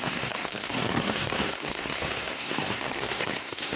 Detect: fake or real fake